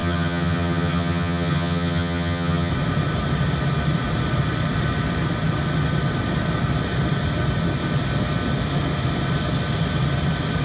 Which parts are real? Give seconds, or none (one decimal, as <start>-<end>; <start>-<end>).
2.7-10.6